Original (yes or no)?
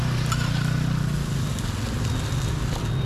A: yes